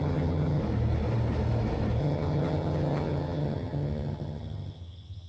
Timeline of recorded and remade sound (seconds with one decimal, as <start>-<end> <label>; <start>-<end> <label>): 0.0-0.6 remade; 0.6-2.0 recorded; 2.0-5.3 remade